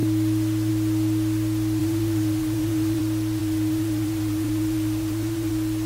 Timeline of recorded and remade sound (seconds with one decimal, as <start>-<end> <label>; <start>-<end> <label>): 0.0-1.8 recorded; 1.8-3.0 remade; 3.0-3.4 recorded; 3.4-5.5 remade; 5.5-5.9 recorded